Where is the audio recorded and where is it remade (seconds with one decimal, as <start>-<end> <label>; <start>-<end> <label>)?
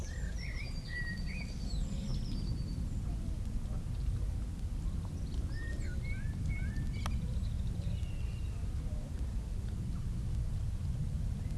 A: 0.0-11.6 recorded